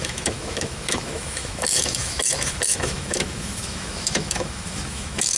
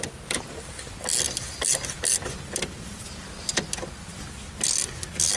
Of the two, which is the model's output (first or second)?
first